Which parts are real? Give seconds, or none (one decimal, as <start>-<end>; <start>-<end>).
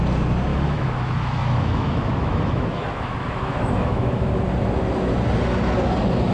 0.0-0.5; 4.3-6.3